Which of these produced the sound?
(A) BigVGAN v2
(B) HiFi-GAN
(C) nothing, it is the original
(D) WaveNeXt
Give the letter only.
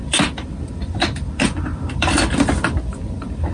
A